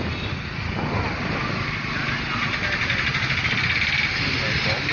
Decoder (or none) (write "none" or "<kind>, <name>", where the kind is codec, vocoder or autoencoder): none